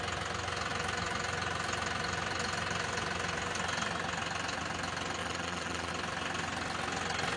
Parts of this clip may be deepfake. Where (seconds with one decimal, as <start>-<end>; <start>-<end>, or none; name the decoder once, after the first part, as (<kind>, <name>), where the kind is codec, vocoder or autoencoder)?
5.2-5.9 (vocoder, Vocos)